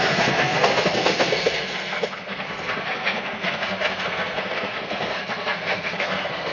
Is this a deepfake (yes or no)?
yes